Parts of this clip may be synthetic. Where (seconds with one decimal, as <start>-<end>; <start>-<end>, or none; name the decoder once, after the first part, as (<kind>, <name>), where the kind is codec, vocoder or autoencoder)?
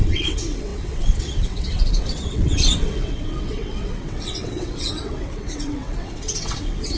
0.0-7.0 (vocoder, WaveNeXt)